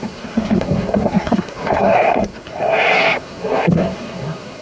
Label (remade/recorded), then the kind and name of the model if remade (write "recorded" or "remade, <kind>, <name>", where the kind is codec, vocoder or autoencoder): remade, codec, SNAC